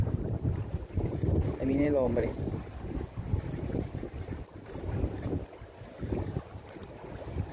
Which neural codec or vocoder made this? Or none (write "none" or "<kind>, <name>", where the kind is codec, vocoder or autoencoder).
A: vocoder, BigVGAN v2